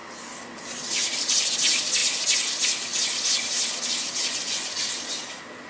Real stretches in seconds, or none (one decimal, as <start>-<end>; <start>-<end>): 0.0-4.2; 4.8-5.7